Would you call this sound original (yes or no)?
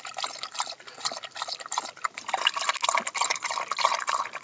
yes